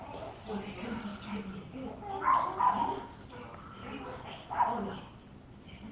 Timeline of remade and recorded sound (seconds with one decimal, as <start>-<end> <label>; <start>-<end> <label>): 0.0-5.9 recorded